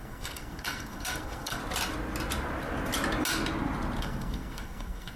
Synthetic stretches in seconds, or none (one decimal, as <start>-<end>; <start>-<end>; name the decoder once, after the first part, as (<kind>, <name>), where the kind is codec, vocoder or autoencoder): 0.0-1.6 (codec, SNAC); 4.0-5.2